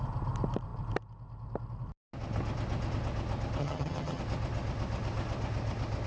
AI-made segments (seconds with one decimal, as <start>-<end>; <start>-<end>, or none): 3.6-4.2